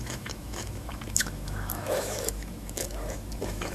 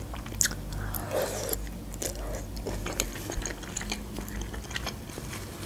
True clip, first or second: second